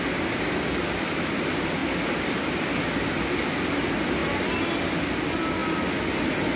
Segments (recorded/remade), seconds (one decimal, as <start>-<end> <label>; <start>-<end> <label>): 0.0-6.6 recorded